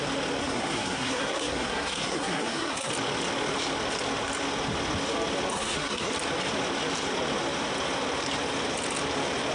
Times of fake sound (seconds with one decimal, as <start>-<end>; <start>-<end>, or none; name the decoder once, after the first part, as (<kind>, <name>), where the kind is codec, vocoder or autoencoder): 0.4-2.9 (codec, SNAC); 5.5-6.1